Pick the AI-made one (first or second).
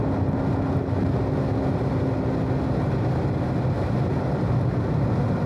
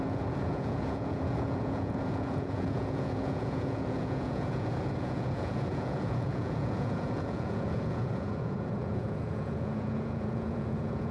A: second